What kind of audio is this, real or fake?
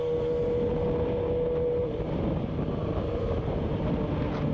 real